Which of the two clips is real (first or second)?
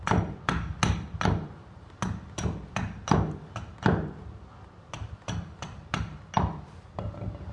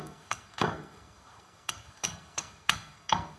first